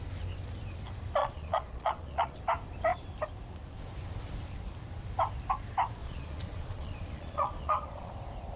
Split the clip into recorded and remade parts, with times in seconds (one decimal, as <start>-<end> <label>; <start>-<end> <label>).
0.0-1.2 recorded; 1.2-2.4 remade; 2.4-6.0 recorded; 6.0-8.1 remade; 8.1-8.6 recorded